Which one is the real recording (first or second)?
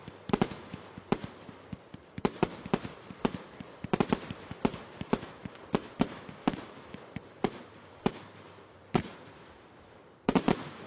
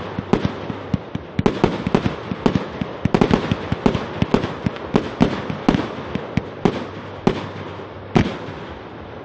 second